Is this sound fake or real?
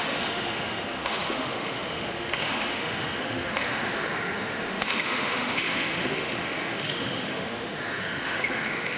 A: fake